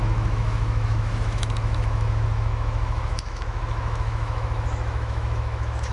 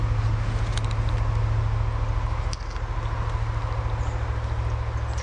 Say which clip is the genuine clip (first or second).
second